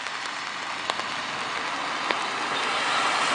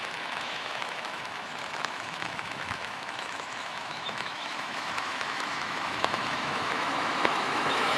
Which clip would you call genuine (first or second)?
first